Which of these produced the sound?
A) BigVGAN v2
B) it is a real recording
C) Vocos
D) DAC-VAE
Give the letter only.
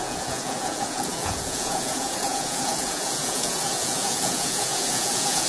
C